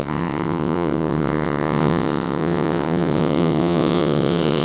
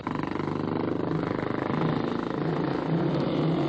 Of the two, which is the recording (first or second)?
second